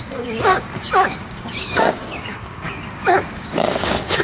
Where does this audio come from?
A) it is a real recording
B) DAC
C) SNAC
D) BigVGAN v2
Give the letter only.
B